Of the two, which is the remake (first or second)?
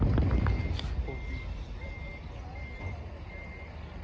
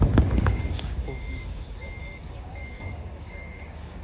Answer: second